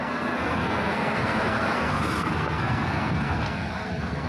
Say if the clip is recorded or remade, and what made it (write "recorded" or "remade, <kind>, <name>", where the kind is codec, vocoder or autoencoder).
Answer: remade, codec, SNAC